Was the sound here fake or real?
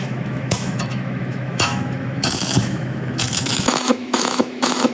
fake